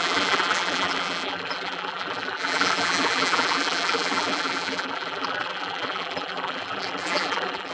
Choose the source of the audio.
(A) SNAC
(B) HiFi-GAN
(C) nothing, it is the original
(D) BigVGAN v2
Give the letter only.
D